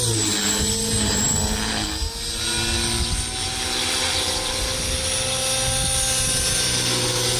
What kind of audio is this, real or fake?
real